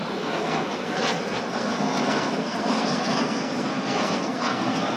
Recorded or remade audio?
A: remade